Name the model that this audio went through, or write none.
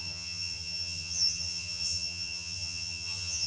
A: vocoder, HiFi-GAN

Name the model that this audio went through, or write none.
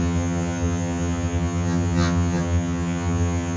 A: vocoder, HiFi-GAN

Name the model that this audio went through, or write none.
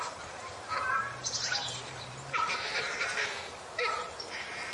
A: vocoder, BigVGAN v2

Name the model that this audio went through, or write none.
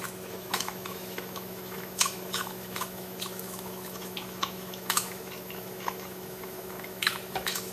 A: autoencoder, DAC-VAE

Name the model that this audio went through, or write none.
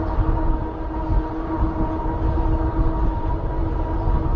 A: none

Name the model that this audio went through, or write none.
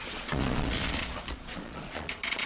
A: vocoder, Vocos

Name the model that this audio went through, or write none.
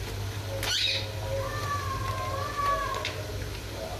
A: none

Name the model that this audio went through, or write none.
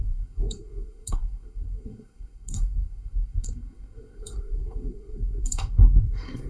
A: codec, SNAC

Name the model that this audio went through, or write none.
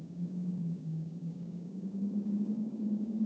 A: codec, DAC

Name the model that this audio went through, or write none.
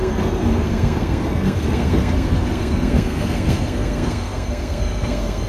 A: codec, SNAC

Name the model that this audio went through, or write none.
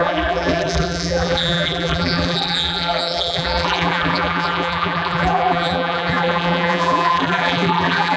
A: vocoder, BigVGAN v2